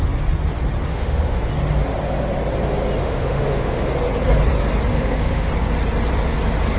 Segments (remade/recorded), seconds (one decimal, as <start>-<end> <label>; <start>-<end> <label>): 0.0-0.9 recorded; 0.9-1.5 remade; 1.5-3.0 recorded; 3.0-3.9 remade; 3.9-4.9 recorded; 4.9-5.5 remade; 5.5-6.8 recorded